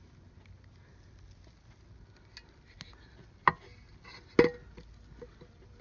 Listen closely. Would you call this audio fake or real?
real